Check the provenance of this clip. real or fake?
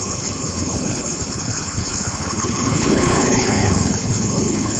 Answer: fake